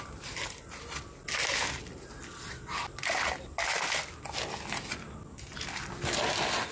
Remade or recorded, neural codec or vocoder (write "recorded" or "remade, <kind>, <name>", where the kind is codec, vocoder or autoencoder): recorded